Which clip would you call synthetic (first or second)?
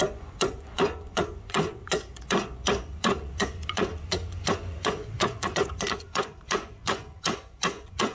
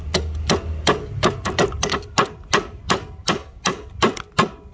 first